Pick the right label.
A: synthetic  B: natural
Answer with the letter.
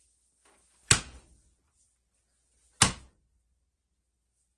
B